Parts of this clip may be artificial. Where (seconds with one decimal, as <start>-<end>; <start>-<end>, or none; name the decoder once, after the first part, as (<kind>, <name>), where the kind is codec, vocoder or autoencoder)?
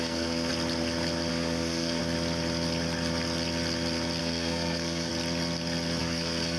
0.0-0.5 (codec, SNAC); 1.3-2.0; 4.2-5.1; 6.0-6.6